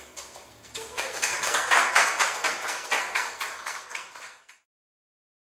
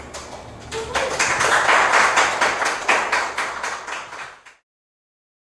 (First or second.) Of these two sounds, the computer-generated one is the first